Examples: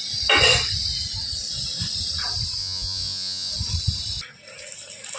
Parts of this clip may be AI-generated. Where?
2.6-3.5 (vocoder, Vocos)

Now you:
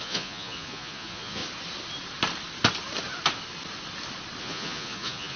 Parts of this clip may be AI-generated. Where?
0.0-1.4 (vocoder, Vocos); 4.4-5.4

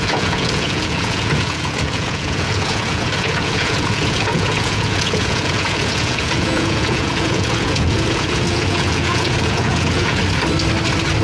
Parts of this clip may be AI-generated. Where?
0.0-10.2 (vocoder, Vocos)